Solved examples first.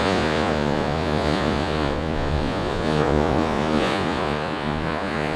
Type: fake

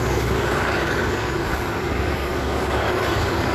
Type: fake